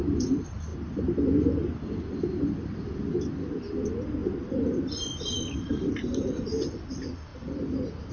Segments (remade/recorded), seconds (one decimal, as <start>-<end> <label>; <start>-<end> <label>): 0.0-0.7 remade; 0.7-1.9 recorded; 1.9-8.1 remade